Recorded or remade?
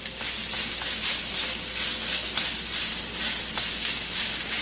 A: recorded